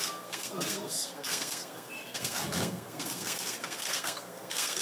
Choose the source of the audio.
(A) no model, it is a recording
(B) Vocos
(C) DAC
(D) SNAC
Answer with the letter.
D